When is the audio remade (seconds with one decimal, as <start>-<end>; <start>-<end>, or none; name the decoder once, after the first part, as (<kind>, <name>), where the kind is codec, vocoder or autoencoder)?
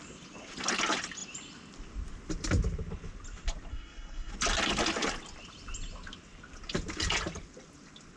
3.7-4.3 (codec, SNAC)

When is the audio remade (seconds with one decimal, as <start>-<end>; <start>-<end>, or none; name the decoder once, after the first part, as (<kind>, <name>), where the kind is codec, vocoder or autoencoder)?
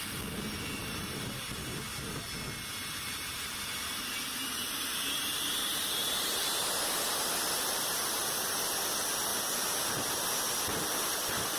0.8-1.5 (vocoder, BigVGAN v2); 2.7-8.0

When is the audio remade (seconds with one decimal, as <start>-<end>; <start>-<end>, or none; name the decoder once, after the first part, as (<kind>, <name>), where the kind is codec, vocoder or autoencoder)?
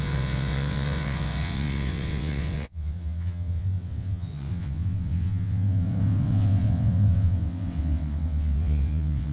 0.0-9.3 (vocoder, WaveNeXt)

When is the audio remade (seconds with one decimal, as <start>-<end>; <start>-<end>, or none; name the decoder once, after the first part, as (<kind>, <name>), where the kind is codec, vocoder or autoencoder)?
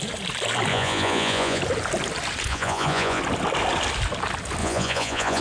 0.7-1.6 (vocoder, Vocos); 2.5-3.2; 4.6-5.4